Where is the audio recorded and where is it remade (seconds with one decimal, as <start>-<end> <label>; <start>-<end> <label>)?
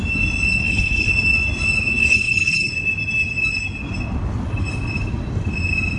0.0-0.6 recorded; 0.6-1.1 remade; 1.1-2.0 recorded; 2.0-2.7 remade; 2.7-6.0 recorded